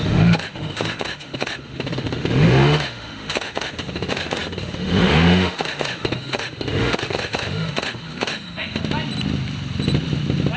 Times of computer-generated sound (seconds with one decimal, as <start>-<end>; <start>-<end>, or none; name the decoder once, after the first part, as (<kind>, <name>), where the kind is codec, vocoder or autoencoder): 0.0-8.8 (autoencoder, DAC-VAE)